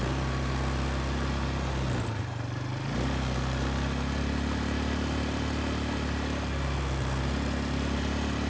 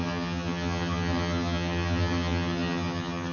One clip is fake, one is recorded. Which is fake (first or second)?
second